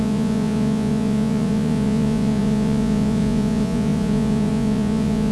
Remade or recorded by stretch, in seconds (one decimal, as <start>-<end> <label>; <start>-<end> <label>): 0.0-5.3 remade